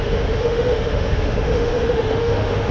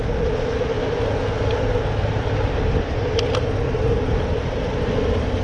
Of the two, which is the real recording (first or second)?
second